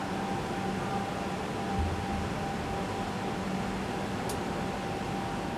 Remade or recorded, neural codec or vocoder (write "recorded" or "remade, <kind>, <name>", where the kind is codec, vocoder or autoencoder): recorded